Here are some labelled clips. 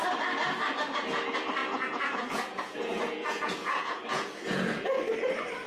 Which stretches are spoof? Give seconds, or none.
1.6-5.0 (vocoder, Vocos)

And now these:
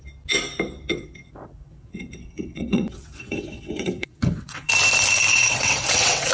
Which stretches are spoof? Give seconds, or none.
0.9-4.7 (vocoder, WaveNeXt); 5.3-6.3

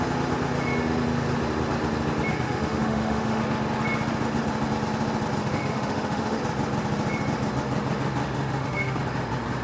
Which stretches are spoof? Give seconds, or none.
2.3-3.4 (autoencoder, DAC-VAE); 5.4-6.4; 8.2-9.0

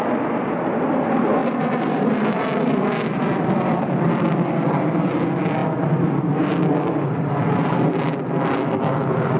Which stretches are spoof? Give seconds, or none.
none

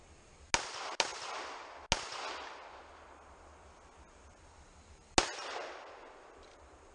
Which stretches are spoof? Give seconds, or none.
none